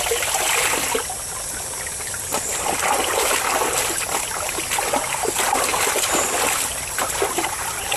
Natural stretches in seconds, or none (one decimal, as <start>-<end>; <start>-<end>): 0.0-2.5; 4.9-5.7; 6.5-8.0